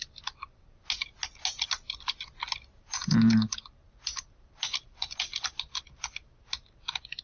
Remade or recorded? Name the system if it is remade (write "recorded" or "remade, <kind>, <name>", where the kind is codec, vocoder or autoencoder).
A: recorded